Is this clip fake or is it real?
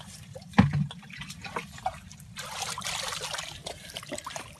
real